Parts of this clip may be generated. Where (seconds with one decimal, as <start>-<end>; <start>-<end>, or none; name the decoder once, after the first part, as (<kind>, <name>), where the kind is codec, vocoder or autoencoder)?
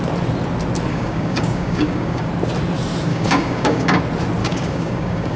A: 0.9-2.3 (codec, DAC); 3.1-4.0; 4.4-5.4